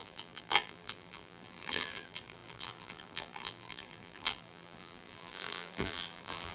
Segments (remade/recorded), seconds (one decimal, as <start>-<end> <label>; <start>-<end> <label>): 0.0-6.5 remade